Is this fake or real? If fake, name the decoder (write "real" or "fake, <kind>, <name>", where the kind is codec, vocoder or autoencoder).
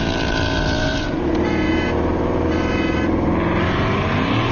fake, vocoder, BigVGAN v2